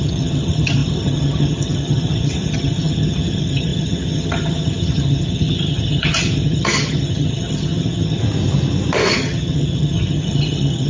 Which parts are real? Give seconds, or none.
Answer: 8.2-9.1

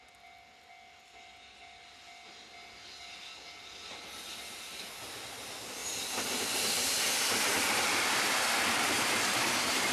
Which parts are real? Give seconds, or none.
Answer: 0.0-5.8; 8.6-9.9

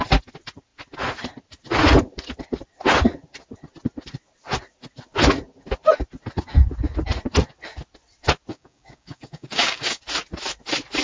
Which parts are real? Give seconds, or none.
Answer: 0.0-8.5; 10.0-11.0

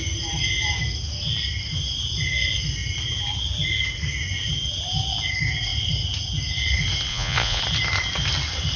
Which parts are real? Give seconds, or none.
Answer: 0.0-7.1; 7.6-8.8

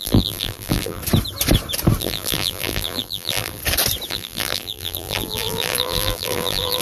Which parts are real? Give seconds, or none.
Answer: 1.0-2.0; 3.6-4.1

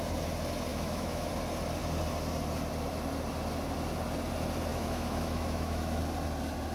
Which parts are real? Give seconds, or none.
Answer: 0.0-0.7; 1.3-4.7; 6.0-6.7